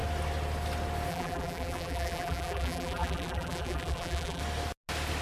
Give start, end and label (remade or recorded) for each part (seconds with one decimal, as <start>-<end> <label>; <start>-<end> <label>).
0.0-1.1 recorded; 1.1-4.4 remade; 4.4-5.2 recorded